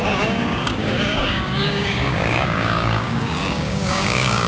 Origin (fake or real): fake